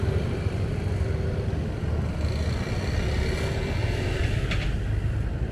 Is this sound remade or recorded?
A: recorded